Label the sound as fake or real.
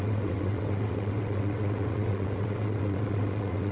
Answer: fake